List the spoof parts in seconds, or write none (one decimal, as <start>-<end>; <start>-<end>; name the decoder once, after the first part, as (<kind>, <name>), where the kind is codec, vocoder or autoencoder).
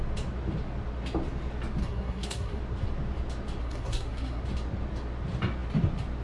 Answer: 1.8-2.6 (codec, SNAC); 3.6-4.4